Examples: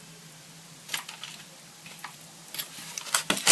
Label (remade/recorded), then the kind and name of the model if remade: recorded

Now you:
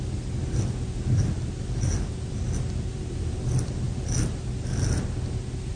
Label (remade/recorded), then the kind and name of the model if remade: recorded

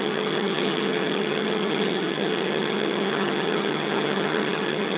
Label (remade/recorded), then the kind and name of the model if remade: remade, vocoder, HiFi-GAN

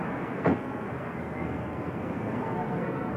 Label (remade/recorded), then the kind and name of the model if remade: remade, codec, SNAC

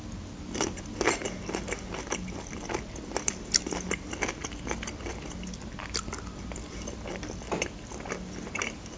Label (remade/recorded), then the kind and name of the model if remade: recorded